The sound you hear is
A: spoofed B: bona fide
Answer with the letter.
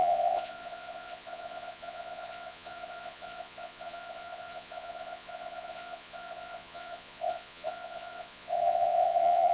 A